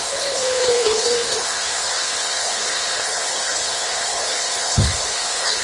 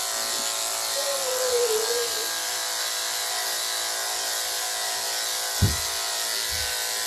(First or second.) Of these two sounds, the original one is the second